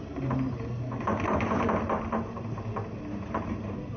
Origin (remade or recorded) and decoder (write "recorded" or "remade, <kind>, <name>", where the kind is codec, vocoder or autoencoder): remade, vocoder, BigVGAN v2